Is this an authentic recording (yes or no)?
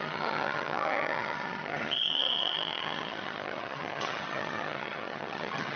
no